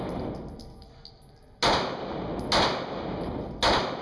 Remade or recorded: recorded